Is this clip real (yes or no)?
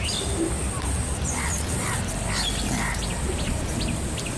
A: yes